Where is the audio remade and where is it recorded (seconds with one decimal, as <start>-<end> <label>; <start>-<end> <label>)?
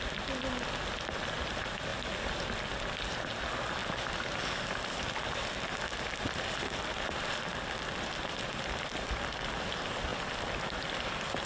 0.0-11.5 recorded